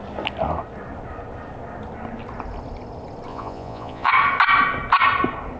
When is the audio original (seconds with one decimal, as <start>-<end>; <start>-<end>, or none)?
0.0-3.3; 4.1-5.6